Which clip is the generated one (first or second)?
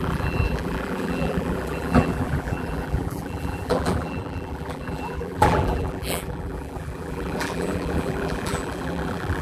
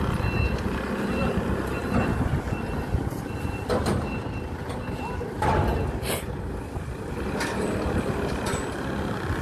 first